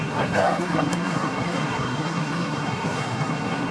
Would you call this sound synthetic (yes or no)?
yes